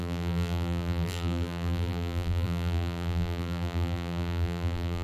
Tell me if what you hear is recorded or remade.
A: remade